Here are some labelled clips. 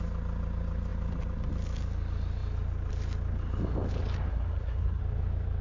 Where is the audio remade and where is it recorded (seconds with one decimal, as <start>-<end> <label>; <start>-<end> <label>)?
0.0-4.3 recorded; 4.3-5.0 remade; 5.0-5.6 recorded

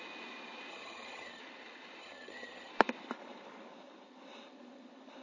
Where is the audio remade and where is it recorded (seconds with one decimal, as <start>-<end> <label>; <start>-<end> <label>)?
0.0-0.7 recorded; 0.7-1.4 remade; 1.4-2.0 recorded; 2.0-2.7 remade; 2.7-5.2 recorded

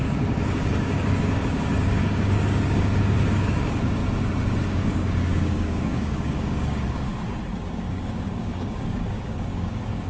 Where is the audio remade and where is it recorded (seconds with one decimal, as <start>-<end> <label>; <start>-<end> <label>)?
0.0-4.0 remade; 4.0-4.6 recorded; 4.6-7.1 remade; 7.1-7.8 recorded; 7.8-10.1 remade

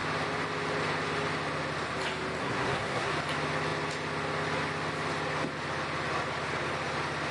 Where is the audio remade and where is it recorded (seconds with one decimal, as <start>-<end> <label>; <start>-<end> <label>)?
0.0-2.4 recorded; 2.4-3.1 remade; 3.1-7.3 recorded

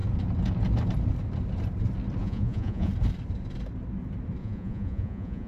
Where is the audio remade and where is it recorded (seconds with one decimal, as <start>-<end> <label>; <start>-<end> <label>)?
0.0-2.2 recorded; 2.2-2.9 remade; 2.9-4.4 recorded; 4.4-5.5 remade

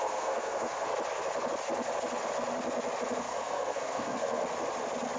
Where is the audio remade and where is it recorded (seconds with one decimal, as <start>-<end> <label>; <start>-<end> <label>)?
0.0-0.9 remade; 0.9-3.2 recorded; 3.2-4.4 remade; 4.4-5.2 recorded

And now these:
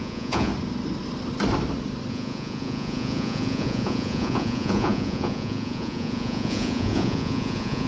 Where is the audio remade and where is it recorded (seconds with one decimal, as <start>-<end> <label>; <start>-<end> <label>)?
0.0-0.5 remade; 0.5-2.1 recorded; 2.1-7.9 remade